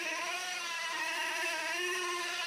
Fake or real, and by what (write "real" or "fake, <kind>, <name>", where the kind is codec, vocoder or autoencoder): real